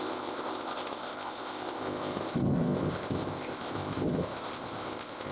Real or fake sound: fake